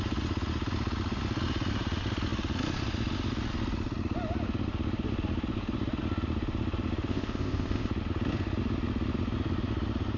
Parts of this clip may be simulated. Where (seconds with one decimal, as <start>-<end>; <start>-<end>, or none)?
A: 7.1-7.9